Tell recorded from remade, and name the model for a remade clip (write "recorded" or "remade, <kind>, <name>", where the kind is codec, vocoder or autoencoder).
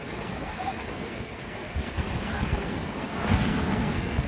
remade, codec, SNAC